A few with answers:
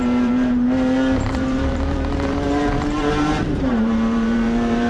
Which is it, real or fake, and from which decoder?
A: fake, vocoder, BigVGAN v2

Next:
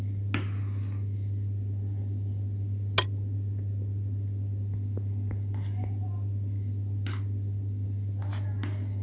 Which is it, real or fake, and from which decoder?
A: real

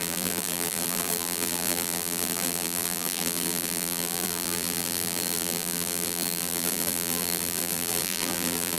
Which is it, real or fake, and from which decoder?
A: fake, vocoder, BigVGAN v2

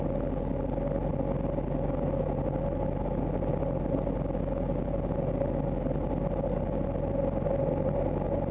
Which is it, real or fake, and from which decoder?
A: real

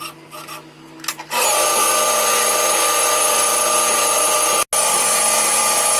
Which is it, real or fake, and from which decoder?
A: real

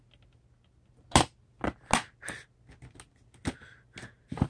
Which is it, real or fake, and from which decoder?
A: real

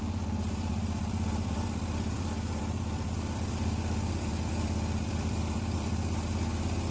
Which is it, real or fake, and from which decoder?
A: fake, vocoder, BigVGAN v2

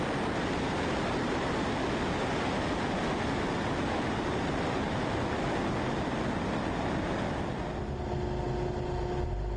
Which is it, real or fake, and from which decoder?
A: real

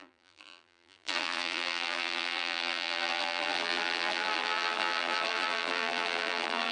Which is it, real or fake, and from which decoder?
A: fake, vocoder, BigVGAN v2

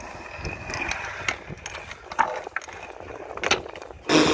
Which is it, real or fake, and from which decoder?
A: real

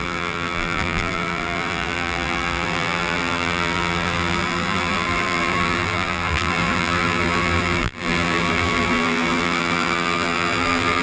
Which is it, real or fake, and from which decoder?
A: fake, vocoder, BigVGAN v2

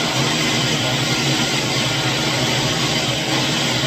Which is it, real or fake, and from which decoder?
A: fake, vocoder, BigVGAN v2